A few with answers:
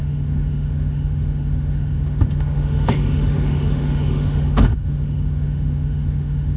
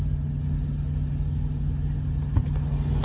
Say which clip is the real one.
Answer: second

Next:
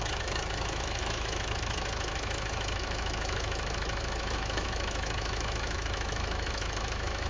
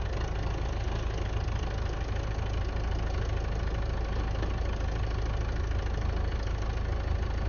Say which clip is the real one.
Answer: second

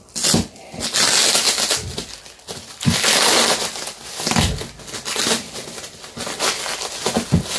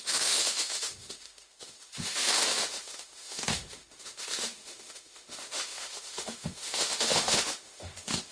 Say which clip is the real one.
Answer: first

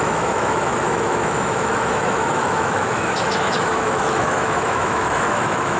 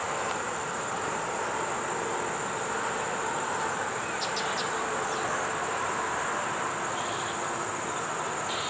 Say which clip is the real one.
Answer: second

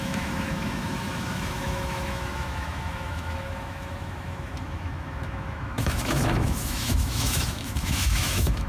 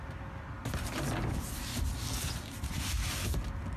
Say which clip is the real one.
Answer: second